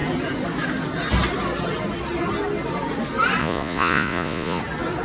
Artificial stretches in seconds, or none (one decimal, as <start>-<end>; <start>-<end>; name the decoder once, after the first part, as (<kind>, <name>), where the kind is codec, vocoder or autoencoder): 3.4-4.6 (vocoder, Vocos)